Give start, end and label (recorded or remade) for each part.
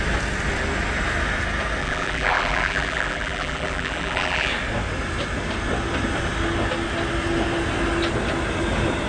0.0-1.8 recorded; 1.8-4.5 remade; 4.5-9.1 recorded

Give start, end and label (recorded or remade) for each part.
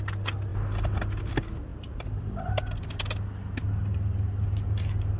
0.0-1.7 recorded; 1.7-2.4 remade; 2.4-5.2 recorded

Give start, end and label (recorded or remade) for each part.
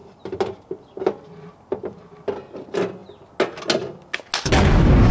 0.0-5.1 recorded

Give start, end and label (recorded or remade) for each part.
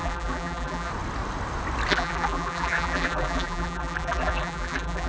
0.0-0.9 remade; 0.9-1.9 recorded; 1.9-5.1 remade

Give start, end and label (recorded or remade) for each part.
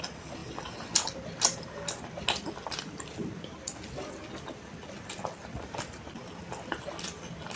0.0-7.6 recorded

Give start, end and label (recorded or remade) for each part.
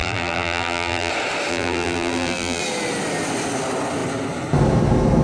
0.0-1.1 remade; 1.1-1.5 recorded; 1.5-2.6 remade; 2.6-5.2 recorded